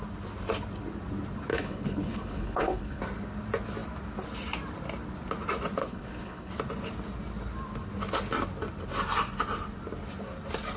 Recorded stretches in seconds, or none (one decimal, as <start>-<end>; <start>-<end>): 0.0-1.5; 3.0-5.8; 6.5-10.8